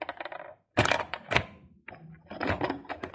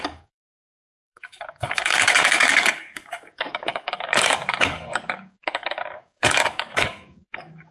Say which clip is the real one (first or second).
first